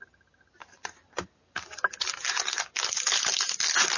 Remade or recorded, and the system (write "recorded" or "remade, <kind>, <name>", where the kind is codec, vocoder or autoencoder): recorded